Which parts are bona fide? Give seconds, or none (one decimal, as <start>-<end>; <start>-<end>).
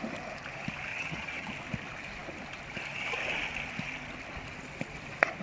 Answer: 0.0-0.9; 1.5-5.4